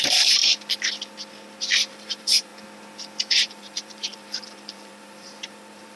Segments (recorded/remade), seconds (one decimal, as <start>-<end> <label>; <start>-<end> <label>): 0.0-0.4 remade; 0.4-1.9 recorded; 1.9-2.5 remade; 2.5-3.3 recorded; 3.3-6.0 remade